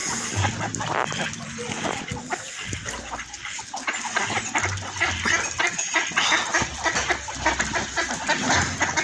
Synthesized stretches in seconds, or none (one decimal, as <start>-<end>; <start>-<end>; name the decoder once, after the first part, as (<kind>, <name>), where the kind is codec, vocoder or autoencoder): none